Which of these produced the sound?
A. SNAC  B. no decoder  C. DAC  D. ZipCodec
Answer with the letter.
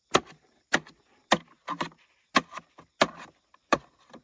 B